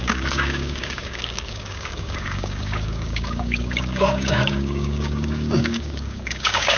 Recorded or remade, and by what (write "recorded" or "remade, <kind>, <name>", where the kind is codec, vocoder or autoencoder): remade, codec, DAC